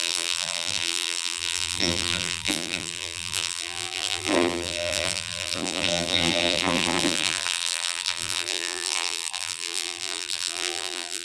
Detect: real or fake fake